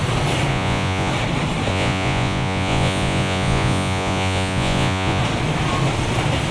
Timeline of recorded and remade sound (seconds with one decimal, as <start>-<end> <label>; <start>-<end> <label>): 0.0-0.5 recorded; 0.5-1.1 remade; 1.1-1.7 recorded; 1.7-5.2 remade; 5.2-6.5 recorded